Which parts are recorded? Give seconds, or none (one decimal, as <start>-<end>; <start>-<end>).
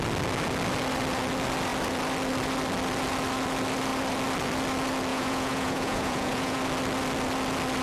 0.0-5.1; 6.6-7.8